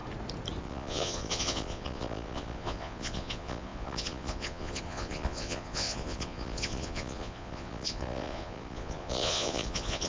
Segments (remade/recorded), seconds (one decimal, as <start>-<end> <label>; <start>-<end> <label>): 0.0-0.6 recorded; 0.6-10.1 remade